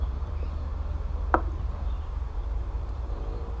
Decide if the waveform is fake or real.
fake